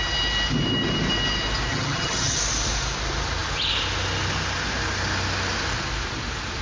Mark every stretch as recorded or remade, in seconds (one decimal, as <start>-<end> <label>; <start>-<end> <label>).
0.0-1.7 recorded; 1.7-2.4 remade; 2.4-6.6 recorded